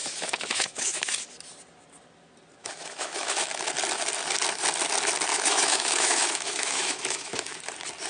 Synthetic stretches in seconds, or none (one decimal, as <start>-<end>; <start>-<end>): 0.0-1.2; 2.6-3.5; 5.3-7.6

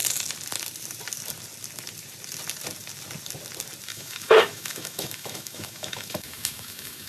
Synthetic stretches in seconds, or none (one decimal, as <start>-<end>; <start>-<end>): 3.9-7.1

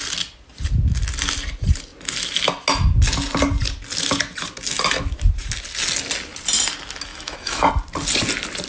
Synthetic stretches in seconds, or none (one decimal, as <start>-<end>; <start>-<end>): 7.1-7.7

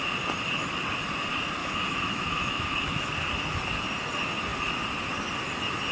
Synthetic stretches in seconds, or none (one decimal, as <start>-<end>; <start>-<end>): 1.6-3.1

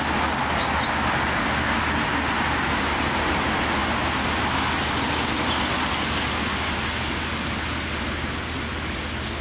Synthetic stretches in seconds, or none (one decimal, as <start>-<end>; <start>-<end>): none

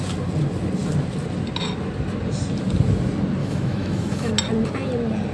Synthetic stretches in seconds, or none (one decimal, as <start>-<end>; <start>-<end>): 3.4-4.3

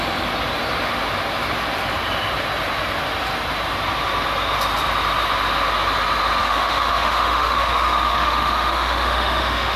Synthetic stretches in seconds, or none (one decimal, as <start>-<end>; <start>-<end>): 6.4-9.8